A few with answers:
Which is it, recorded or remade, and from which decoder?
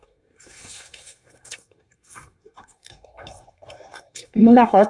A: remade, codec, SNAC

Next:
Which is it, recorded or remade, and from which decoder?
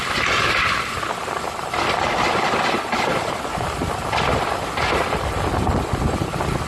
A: recorded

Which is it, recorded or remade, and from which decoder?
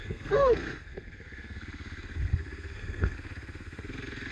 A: remade, codec, SNAC